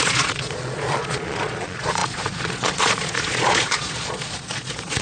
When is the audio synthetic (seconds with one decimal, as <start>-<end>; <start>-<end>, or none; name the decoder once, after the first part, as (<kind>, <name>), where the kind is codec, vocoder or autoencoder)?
0.0-5.0 (vocoder, Vocos)